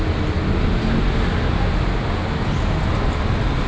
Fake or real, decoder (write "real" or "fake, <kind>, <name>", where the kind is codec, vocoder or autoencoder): real